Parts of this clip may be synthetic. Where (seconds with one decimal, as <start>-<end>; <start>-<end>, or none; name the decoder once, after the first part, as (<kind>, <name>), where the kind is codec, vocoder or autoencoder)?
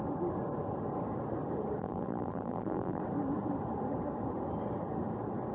1.8-3.0 (vocoder, BigVGAN v2)